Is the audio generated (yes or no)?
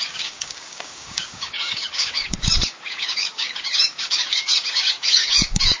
yes